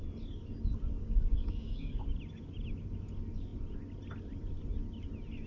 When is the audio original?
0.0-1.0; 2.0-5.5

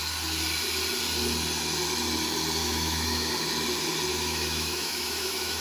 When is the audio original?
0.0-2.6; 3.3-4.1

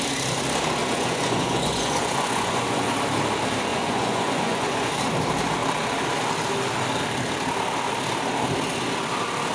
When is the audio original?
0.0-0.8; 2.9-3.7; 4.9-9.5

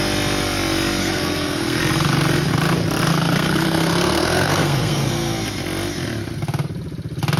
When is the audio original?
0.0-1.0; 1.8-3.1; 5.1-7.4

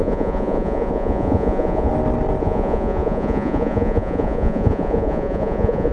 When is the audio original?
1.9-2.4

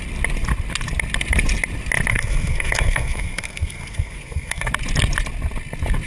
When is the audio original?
0.0-2.1; 4.7-6.1

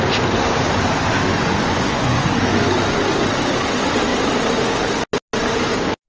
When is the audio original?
0.0-1.3; 2.3-6.1

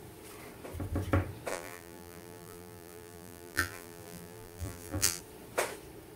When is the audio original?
0.0-1.5; 5.2-6.2